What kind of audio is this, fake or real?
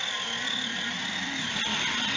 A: fake